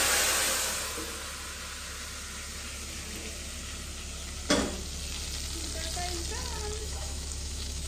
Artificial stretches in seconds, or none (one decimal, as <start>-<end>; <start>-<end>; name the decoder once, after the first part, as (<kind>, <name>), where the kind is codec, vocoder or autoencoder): 6.8-7.9 (autoencoder, DAC-VAE)